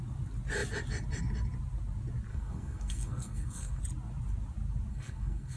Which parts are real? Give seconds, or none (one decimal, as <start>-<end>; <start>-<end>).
0.0-2.3; 3.8-4.9